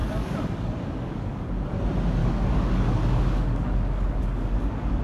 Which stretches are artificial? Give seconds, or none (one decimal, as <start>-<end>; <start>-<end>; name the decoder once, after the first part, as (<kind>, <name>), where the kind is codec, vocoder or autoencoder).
0.0-1.5 (codec, DAC); 2.2-5.0